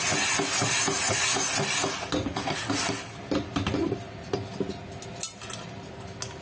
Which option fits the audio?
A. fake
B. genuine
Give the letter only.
B